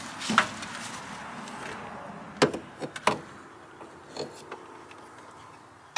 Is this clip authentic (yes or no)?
yes